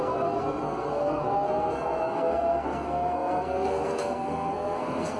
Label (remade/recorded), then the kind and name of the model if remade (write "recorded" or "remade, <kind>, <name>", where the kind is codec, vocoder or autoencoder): remade, codec, SNAC